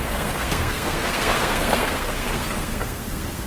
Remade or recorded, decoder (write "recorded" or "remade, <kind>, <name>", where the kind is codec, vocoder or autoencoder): remade, codec, SNAC